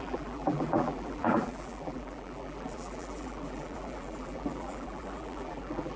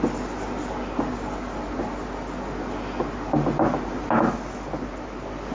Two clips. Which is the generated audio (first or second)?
first